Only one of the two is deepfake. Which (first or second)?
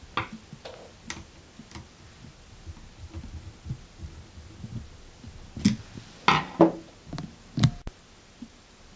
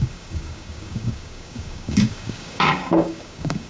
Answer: second